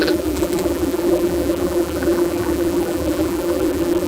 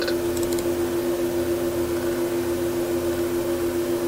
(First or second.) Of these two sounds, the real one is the second